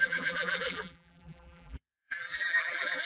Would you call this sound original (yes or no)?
no